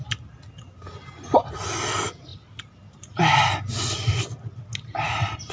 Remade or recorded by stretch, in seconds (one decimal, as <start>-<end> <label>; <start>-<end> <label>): 0.0-5.5 recorded